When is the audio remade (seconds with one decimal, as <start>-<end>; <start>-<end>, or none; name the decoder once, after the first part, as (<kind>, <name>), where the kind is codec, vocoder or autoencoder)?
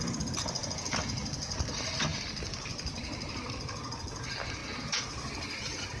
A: none